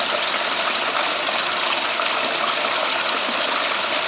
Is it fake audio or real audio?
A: real